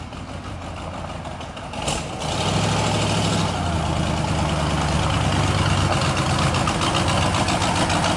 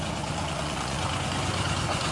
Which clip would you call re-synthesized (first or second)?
second